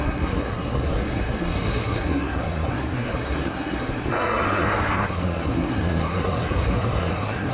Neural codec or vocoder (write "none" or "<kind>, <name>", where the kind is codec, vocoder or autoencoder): codec, SNAC